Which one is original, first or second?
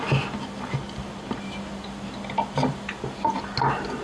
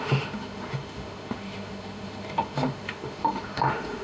first